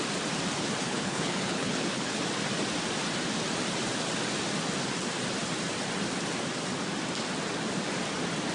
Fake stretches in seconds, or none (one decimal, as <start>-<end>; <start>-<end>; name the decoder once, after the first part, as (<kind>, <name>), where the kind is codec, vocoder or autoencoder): 0.8-2.2 (codec, HILCodec)

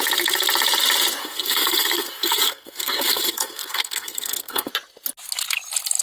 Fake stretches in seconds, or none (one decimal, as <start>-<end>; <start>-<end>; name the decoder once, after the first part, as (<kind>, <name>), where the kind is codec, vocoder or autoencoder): 1.2-4.7 (codec, SNAC)

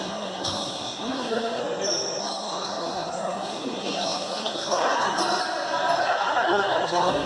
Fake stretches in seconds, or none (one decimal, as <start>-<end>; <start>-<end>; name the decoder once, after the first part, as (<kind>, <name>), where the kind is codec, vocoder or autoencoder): 0.0-1.6 (codec, SNAC); 2.2-5.2; 6.0-7.3